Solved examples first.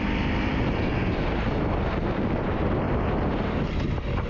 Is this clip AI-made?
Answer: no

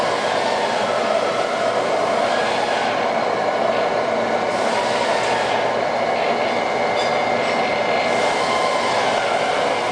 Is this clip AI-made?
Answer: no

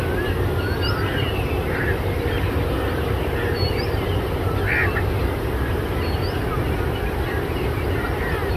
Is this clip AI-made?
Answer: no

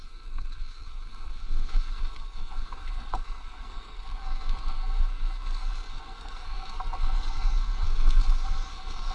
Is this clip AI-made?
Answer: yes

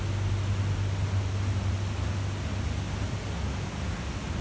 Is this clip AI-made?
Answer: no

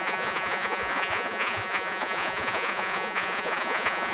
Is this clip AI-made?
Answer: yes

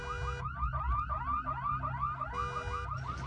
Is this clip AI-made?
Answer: no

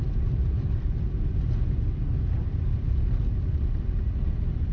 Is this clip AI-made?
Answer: no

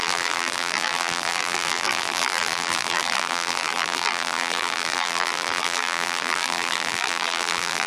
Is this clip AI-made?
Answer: yes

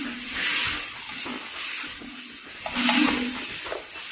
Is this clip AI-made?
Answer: no